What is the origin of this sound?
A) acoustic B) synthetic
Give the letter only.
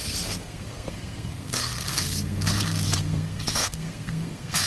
B